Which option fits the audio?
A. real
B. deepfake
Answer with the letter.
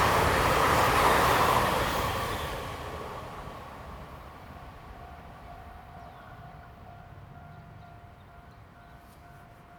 B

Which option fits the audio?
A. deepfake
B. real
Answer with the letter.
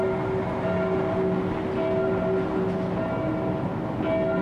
B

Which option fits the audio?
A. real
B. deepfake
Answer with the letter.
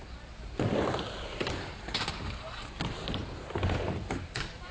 B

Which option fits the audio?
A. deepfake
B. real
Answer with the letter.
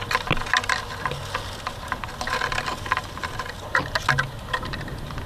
B